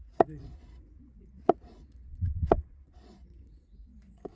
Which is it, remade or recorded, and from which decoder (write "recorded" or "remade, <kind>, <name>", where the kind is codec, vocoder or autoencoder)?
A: remade, vocoder, Vocos